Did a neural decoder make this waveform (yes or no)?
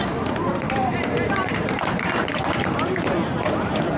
yes